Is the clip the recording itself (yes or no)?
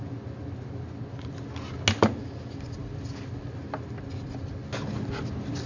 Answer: yes